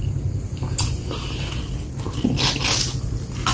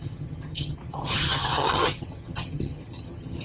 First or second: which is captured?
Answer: first